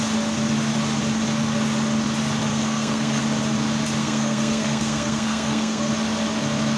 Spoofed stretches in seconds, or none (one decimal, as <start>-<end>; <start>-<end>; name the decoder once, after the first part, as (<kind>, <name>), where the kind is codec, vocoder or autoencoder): 2.5-3.2 (codec, SNAC); 4.0-5.9